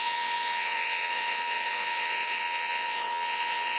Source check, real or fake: fake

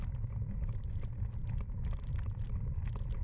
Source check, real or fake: real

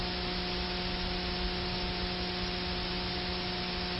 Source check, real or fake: real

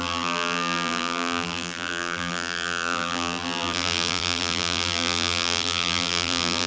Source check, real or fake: fake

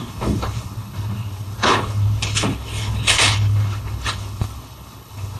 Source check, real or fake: fake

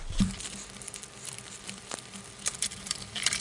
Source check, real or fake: fake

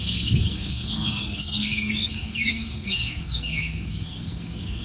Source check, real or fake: fake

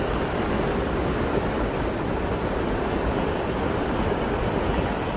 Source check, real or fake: real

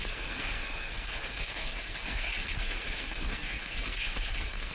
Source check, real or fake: fake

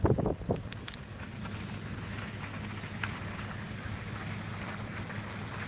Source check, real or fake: real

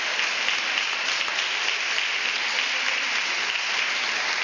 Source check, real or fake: real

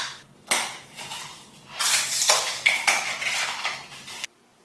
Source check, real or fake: fake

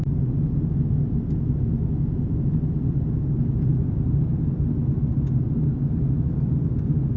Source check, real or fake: real